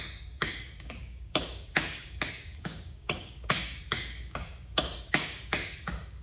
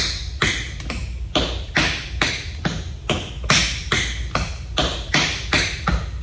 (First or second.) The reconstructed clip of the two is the first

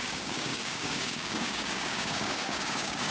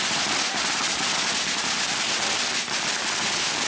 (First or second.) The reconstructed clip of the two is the first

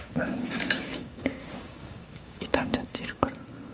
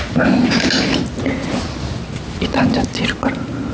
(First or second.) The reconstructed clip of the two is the first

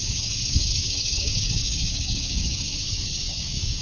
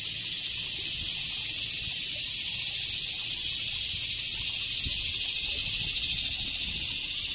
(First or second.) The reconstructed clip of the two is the first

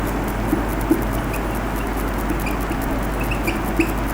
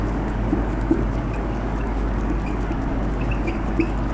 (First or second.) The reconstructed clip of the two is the second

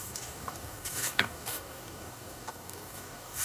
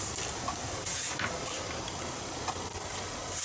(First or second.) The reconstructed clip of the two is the first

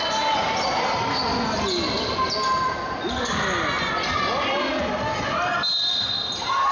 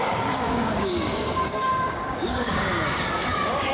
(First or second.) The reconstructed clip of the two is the second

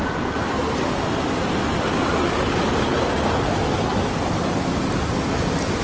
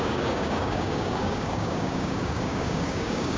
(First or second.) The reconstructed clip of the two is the second